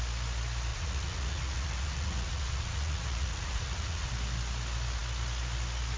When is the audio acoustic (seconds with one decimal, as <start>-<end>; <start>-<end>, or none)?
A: 0.0-0.7; 4.1-6.0

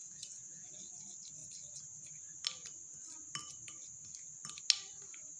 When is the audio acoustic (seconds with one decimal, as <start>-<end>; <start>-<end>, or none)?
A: 0.7-5.4

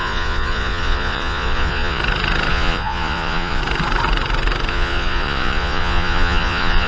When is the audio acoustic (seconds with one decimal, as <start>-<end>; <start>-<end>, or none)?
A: 2.0-2.5; 3.6-4.7

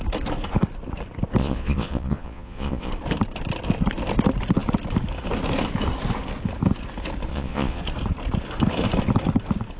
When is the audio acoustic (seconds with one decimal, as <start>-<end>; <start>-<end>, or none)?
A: 0.0-1.4; 2.9-7.3; 7.8-9.8